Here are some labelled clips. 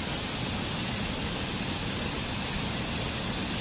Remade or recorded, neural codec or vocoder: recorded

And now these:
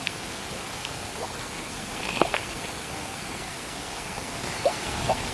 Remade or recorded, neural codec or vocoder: remade, codec, SNAC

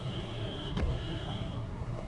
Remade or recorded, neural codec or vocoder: remade, codec, SNAC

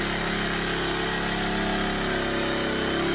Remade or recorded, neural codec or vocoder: recorded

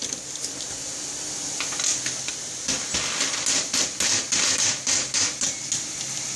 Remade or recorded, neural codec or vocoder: recorded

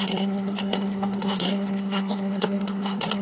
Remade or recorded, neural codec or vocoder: remade, codec, SNAC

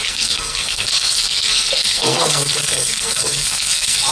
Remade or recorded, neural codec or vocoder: remade, codec, SNAC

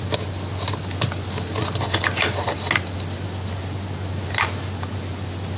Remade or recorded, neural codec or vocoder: recorded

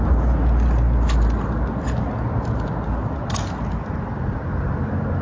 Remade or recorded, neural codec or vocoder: recorded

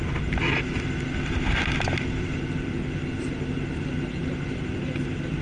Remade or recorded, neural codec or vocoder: recorded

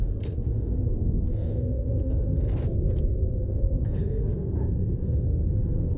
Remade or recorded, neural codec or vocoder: remade, codec, SNAC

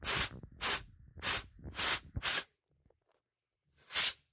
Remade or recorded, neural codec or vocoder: recorded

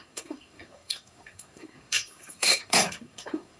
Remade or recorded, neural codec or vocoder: remade, codec, SNAC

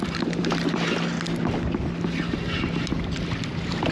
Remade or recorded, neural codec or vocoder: recorded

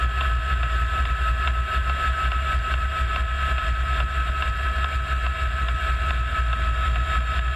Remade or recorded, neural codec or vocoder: recorded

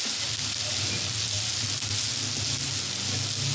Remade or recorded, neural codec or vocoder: recorded